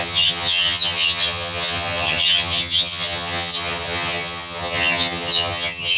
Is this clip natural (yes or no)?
no